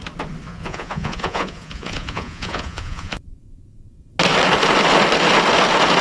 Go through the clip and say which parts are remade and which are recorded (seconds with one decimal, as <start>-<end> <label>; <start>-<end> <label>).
0.0-0.5 recorded; 0.5-4.1 remade; 4.1-6.0 recorded